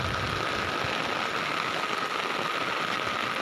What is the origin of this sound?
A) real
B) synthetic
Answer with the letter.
A